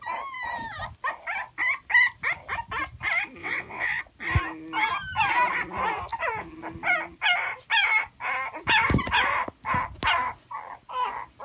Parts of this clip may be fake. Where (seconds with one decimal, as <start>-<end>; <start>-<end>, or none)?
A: 3.4-4.0